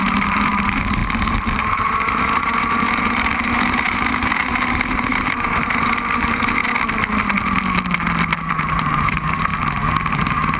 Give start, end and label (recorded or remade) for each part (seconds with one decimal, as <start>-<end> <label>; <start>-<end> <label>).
0.0-1.0 remade; 1.0-1.5 recorded; 1.5-6.6 remade; 6.6-8.5 recorded; 8.5-9.5 remade; 9.5-10.1 recorded; 10.1-10.6 remade